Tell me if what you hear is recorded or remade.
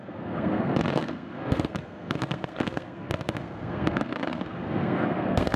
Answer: remade